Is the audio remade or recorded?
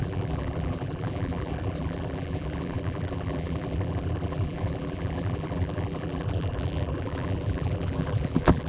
remade